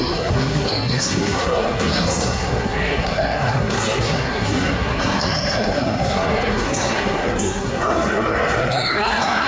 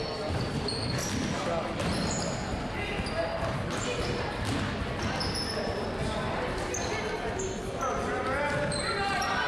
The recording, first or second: second